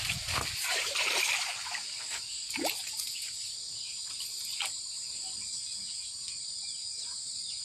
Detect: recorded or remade recorded